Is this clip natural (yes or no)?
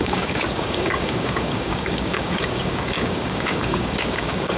no